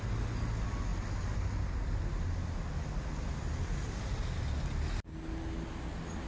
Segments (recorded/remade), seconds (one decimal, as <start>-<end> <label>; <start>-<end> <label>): 0.0-6.3 recorded